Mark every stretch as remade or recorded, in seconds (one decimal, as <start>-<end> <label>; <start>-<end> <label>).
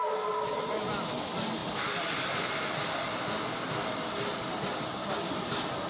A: 0.0-5.9 recorded